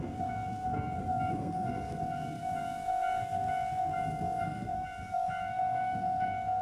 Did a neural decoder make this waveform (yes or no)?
yes